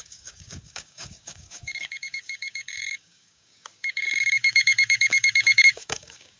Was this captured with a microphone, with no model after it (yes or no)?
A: no